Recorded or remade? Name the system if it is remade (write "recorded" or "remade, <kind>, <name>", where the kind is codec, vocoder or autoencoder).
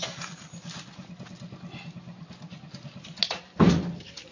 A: recorded